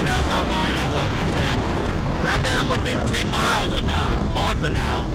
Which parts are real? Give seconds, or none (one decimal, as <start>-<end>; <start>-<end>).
none